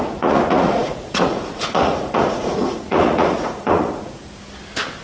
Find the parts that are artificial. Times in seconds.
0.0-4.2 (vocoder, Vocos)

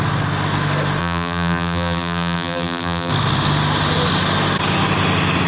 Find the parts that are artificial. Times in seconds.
1.0-3.1 (vocoder, BigVGAN v2)

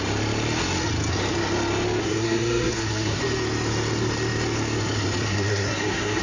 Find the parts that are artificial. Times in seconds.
2.0-3.2 (codec, SNAC); 5.3-6.2

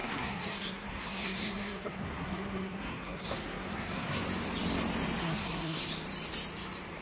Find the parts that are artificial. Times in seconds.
0.0-4.2 (codec, SNAC); 5.2-5.8